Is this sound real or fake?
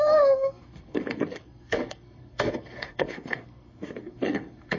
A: fake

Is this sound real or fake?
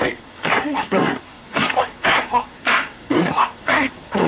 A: fake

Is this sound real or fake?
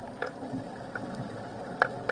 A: real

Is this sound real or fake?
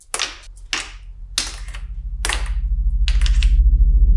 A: real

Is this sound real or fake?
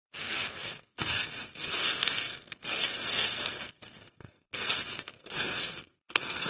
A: fake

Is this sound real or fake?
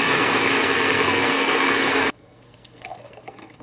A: fake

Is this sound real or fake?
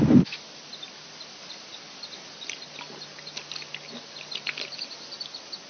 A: real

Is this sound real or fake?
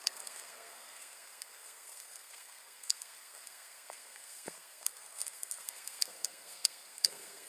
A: fake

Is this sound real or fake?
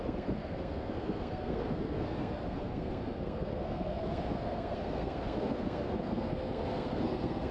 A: fake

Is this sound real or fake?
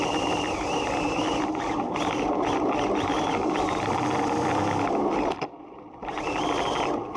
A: real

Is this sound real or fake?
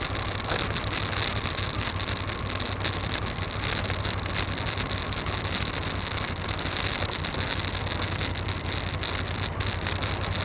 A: real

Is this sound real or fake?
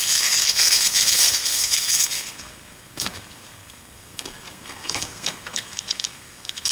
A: fake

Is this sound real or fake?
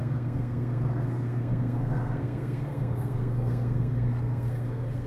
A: fake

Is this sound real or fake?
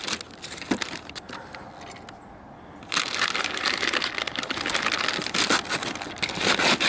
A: real